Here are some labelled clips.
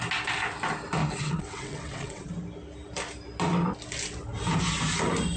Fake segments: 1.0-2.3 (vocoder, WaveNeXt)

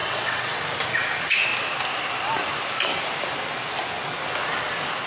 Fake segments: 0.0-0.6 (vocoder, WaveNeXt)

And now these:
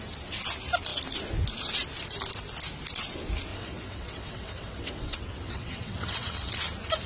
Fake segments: 3.5-6.5 (vocoder, WaveNeXt)